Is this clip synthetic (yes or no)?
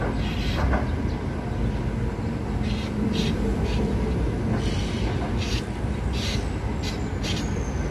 no